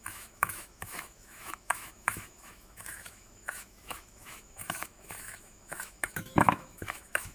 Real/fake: fake